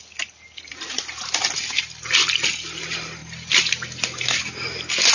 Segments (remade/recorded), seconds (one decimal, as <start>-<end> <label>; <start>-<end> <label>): 0.0-5.1 recorded